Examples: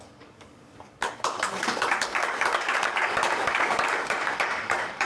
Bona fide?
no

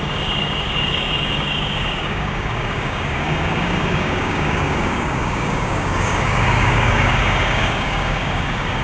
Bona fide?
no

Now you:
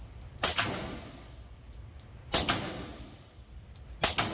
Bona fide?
yes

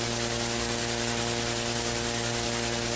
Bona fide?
yes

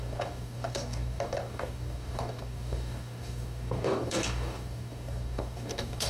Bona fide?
no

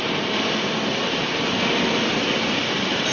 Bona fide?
yes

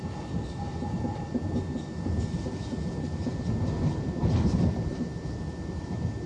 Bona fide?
yes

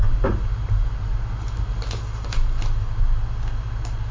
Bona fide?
yes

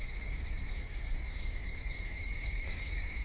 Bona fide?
no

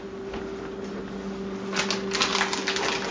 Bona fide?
yes